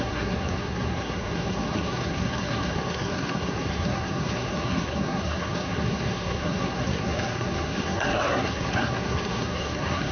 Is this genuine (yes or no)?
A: no